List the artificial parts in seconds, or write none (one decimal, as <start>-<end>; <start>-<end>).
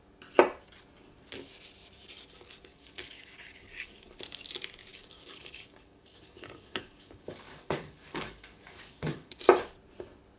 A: 2.7-4.2; 4.9-9.4